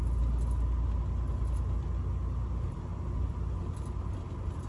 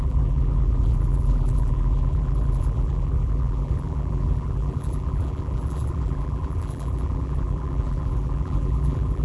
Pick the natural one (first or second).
first